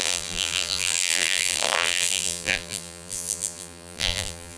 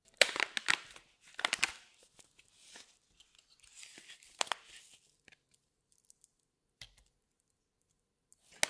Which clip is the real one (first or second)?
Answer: second